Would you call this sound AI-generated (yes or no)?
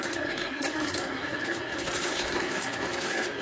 yes